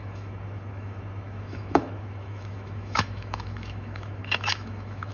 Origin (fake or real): fake